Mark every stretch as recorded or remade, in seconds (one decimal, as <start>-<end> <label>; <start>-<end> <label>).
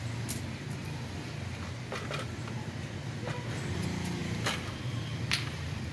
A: 0.0-0.8 recorded; 0.8-1.3 remade; 1.3-4.2 recorded; 4.2-5.9 remade